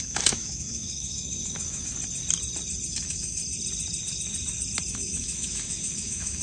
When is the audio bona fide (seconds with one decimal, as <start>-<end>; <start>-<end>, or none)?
1.9-2.9; 3.4-4.9